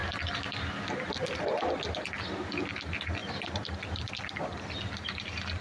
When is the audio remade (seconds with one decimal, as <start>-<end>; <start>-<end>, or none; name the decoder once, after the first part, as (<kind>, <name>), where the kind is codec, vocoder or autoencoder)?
0.0-1.6 (vocoder, BigVGAN v2); 3.2-3.8